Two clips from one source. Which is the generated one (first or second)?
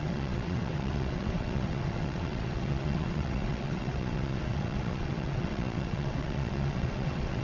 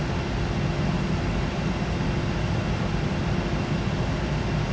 first